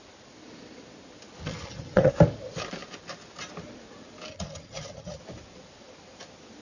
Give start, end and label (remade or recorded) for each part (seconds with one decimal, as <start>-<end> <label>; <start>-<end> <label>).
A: 0.0-1.4 recorded; 1.4-2.1 remade; 2.1-4.3 recorded; 4.3-5.2 remade; 5.2-6.6 recorded